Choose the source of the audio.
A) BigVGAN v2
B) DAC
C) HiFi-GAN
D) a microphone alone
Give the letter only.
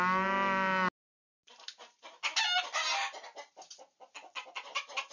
D